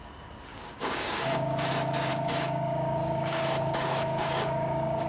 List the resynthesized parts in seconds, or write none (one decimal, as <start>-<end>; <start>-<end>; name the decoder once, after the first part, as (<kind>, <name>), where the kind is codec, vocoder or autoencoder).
0.5-1.7 (codec, DAC); 2.1-5.1